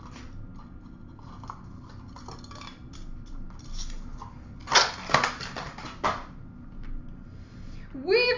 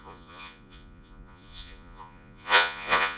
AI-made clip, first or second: second